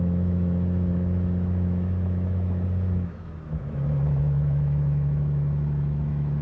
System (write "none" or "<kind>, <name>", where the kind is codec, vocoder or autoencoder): autoencoder, DAC-VAE